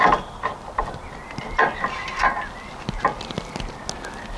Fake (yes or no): no